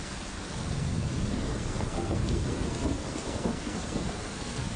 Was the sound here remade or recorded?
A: remade